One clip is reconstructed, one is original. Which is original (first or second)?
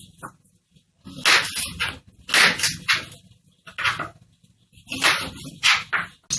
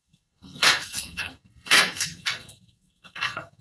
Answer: first